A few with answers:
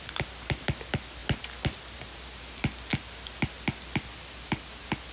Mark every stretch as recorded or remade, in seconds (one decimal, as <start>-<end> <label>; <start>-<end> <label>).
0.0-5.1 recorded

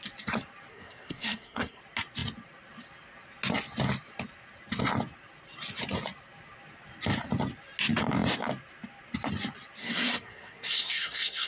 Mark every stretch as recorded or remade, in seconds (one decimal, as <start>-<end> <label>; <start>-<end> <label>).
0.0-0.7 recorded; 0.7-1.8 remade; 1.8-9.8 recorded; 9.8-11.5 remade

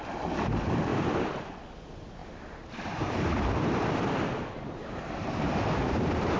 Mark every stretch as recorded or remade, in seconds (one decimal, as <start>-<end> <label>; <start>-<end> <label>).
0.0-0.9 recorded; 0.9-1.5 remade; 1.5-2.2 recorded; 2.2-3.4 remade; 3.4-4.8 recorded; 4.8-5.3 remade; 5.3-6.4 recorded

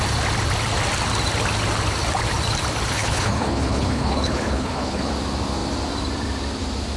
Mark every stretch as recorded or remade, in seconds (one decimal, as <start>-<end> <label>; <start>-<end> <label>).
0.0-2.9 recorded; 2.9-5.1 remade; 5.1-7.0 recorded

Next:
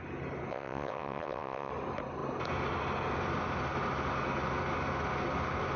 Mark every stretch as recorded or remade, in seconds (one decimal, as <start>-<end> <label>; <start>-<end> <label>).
0.0-0.5 recorded; 0.5-1.7 remade; 1.7-5.8 recorded

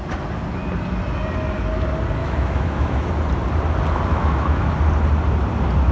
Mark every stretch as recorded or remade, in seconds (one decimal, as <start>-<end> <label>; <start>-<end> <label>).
0.0-2.2 recorded; 2.2-3.1 remade; 3.1-4.1 recorded; 4.1-4.7 remade; 4.7-5.9 recorded